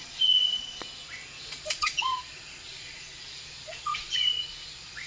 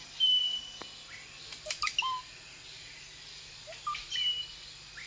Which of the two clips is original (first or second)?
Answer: second